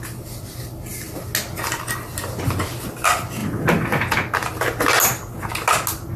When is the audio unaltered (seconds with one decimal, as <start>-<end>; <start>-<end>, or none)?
0.0-6.2